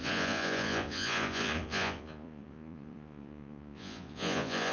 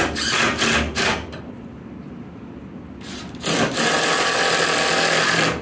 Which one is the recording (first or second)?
second